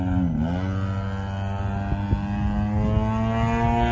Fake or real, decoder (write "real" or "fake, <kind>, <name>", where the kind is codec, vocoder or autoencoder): real